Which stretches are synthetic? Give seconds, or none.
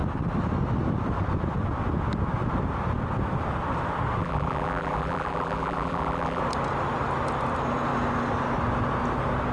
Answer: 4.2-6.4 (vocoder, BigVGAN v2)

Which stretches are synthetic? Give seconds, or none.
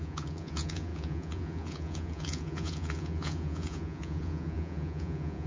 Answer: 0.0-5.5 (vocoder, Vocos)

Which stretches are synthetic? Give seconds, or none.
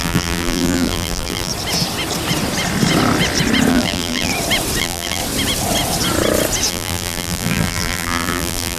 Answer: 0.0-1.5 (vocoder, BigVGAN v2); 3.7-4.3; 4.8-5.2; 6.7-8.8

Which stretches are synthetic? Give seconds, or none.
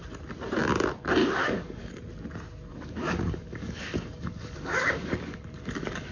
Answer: 1.2-2.0 (codec, DAC); 2.7-6.1